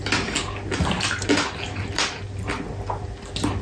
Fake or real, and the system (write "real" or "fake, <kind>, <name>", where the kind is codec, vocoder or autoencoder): real